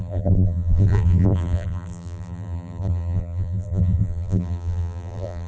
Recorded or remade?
remade